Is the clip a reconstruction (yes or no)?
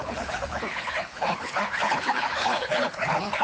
yes